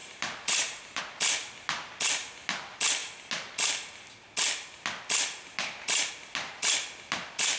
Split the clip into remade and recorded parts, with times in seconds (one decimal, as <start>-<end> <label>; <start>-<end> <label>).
0.0-1.0 remade; 1.0-7.6 recorded